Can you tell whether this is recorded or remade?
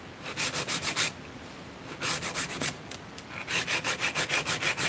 recorded